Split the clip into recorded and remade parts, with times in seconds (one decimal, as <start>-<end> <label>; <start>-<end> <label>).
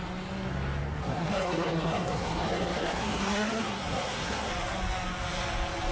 0.0-1.0 recorded; 1.0-4.5 remade; 4.5-5.9 recorded